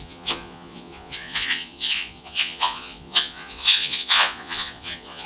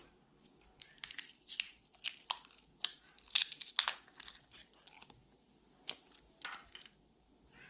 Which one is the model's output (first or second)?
first